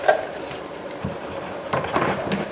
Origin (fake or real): fake